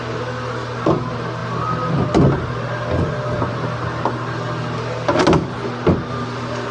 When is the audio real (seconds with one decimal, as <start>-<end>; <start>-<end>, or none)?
0.0-6.7